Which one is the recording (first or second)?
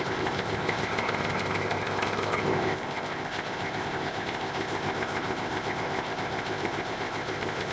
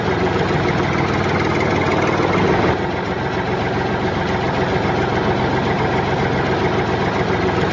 second